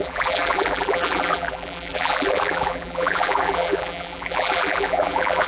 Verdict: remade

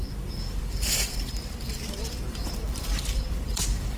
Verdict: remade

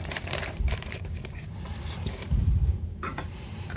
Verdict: remade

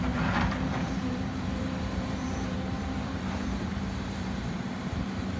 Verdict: remade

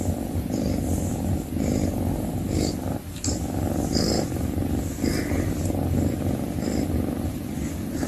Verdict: recorded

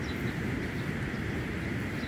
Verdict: remade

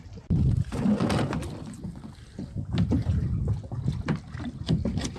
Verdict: recorded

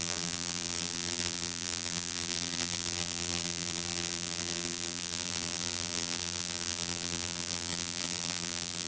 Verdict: remade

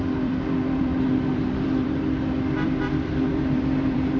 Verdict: remade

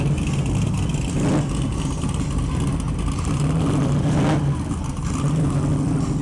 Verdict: recorded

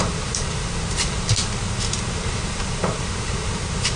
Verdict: remade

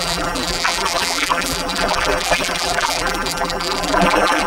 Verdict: remade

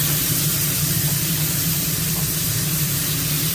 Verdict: remade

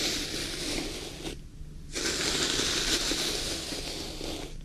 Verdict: recorded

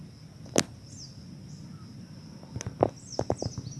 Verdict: recorded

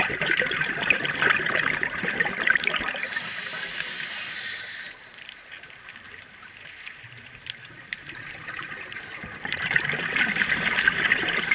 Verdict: remade